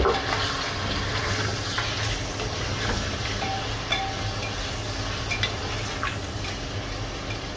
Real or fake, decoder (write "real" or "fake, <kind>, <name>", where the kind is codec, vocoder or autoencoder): real